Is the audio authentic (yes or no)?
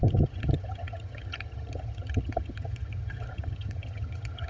no